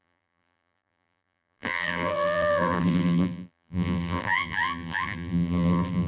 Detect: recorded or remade remade